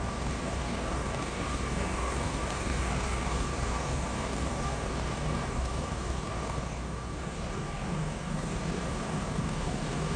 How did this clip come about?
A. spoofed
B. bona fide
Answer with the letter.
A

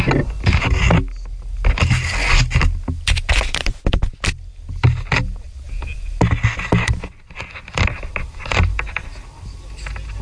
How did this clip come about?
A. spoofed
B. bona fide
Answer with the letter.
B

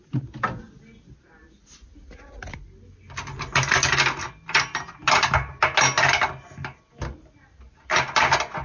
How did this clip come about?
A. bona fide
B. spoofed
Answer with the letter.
A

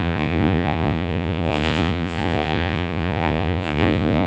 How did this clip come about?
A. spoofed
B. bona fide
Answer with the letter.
A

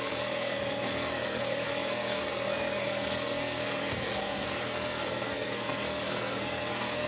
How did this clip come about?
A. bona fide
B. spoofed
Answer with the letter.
B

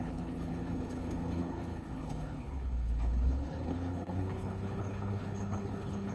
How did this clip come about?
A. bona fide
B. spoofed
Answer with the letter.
B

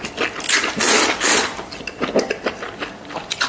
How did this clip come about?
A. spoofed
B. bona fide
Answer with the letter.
B